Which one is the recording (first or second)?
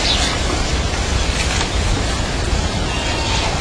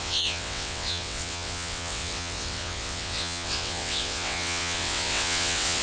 first